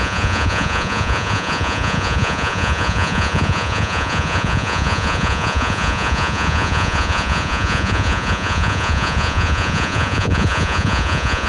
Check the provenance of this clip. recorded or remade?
remade